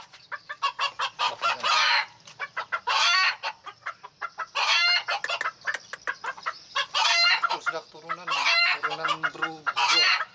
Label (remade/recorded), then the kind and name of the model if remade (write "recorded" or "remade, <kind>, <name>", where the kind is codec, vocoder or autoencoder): recorded